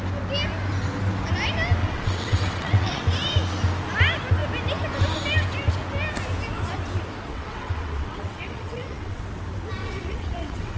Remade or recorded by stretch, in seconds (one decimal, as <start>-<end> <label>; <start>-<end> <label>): 0.0-1.8 recorded; 1.8-3.0 remade; 3.0-7.3 recorded; 7.3-9.2 remade; 9.2-9.8 recorded; 9.8-10.8 remade